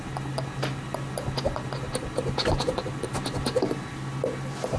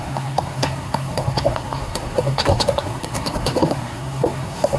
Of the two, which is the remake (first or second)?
second